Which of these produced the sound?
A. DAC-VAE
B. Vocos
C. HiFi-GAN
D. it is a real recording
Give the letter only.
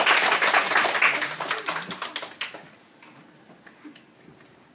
D